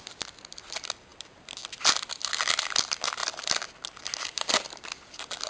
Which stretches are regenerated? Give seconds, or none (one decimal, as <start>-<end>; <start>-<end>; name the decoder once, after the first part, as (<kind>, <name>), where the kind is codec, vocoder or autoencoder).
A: none